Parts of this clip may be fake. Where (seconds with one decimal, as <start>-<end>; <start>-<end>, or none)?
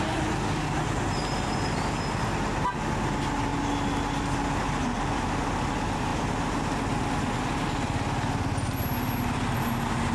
none